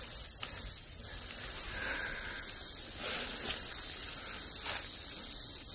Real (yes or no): yes